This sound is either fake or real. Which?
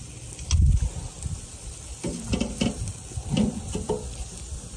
real